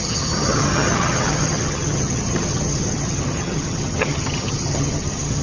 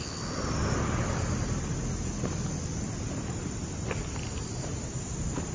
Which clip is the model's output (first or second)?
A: first